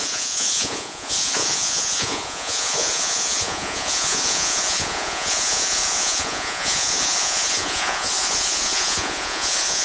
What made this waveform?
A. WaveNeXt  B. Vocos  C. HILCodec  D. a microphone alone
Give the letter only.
B